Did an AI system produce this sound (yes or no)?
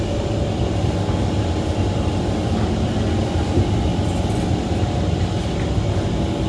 no